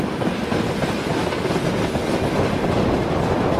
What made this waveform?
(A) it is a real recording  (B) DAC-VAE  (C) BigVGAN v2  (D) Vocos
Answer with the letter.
A